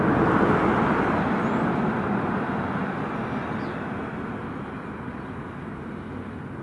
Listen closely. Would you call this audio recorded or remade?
recorded